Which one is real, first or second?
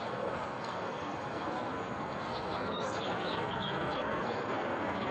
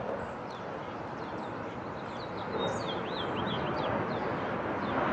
second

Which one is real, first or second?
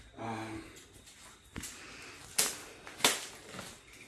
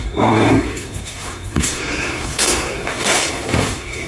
first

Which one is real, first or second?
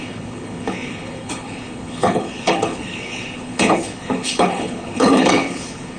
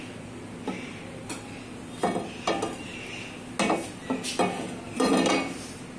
second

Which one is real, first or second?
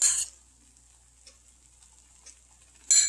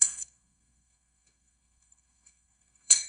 first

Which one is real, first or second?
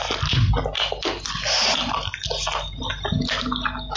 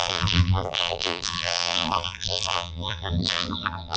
first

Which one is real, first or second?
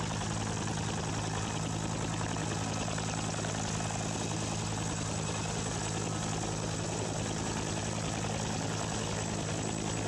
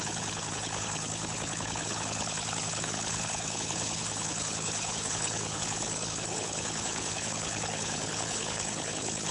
first